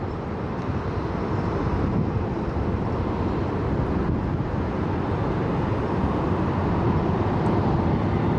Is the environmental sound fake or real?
real